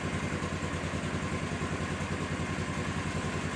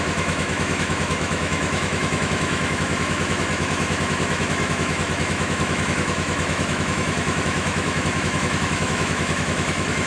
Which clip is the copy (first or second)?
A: second